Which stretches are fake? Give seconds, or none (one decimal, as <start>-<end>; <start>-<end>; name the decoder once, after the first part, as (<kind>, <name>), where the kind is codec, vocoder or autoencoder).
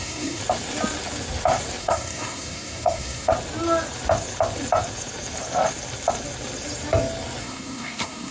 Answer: 0.0-0.4 (codec, SNAC); 1.8-3.3; 7.4-8.3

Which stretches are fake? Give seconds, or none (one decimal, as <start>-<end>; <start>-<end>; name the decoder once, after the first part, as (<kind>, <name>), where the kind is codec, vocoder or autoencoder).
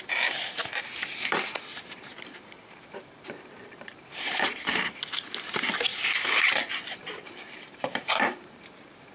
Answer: 1.1-5.0 (vocoder, BigVGAN v2); 5.9-9.1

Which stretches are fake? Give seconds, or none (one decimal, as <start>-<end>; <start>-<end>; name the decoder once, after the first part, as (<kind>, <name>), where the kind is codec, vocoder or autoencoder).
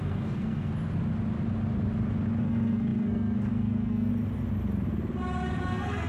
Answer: 0.0-0.7 (codec, SNAC); 2.4-4.1; 5.6-6.1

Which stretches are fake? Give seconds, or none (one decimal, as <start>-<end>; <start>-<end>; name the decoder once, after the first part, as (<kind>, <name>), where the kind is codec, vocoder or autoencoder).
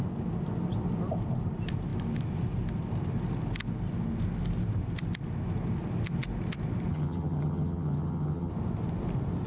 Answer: 6.9-8.5 (vocoder, HiFi-GAN)